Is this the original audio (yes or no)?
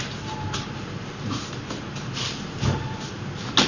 yes